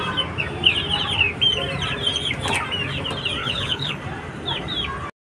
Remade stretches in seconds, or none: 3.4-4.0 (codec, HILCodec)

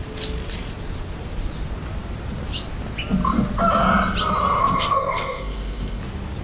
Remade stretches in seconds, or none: 4.6-6.0 (codec, ZipCodec)

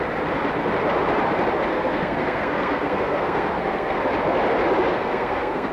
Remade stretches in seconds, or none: 1.7-4.0 (codec, SNAC); 4.9-5.7

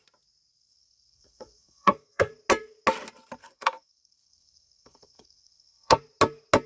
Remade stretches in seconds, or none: 0.5-2.3 (codec, SNAC); 3.4-6.0

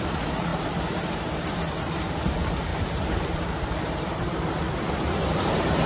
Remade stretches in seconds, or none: 0.5-1.6 (vocoder, BigVGAN v2); 2.7-5.9

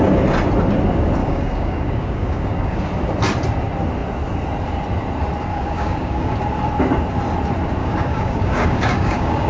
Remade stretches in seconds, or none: 1.2-2.8 (codec, DAC); 5.5-6.3; 7.8-9.5